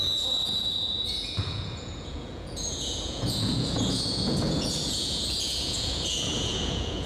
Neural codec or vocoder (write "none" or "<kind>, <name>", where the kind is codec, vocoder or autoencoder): vocoder, Vocos